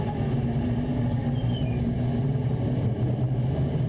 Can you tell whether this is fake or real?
real